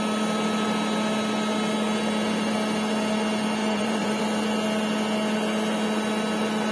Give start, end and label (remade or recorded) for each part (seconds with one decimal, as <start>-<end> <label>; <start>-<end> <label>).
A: 0.0-3.6 recorded; 3.6-4.2 remade; 4.2-6.7 recorded